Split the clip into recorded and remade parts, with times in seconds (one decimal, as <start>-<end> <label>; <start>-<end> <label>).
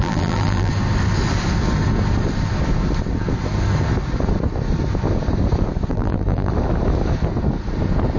0.0-0.7 remade; 0.7-5.9 recorded; 5.9-6.5 remade; 6.5-8.2 recorded